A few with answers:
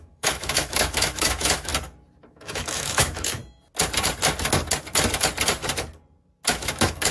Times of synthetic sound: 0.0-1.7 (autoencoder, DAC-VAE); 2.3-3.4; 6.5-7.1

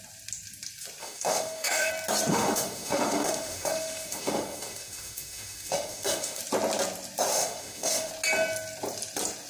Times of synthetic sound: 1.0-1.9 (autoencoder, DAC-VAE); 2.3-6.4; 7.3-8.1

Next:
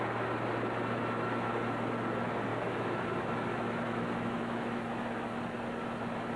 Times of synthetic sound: 2.5-3.0 (autoencoder, DAC-VAE); 3.5-5.4